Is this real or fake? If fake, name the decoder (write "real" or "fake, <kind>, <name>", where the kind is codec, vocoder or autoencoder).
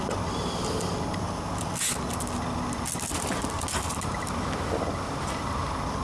real